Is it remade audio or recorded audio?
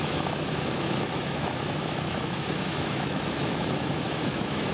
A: remade